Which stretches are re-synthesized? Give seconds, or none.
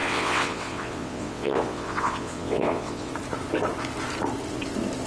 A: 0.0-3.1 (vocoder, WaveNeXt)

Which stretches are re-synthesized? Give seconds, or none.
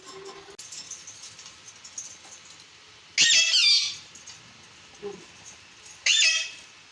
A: none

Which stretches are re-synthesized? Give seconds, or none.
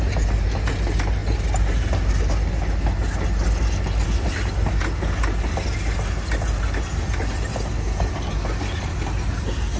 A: none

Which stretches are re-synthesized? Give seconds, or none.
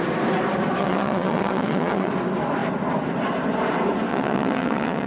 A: 0.8-2.1 (vocoder, WaveNeXt); 4.1-5.1